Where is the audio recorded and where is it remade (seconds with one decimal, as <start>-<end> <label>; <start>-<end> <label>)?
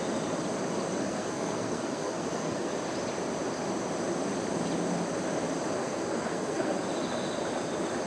0.0-0.9 recorded; 0.9-2.7 remade; 2.7-5.8 recorded; 5.8-6.8 remade; 6.8-8.1 recorded